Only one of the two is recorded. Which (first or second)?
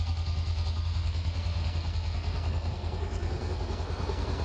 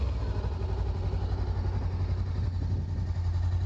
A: second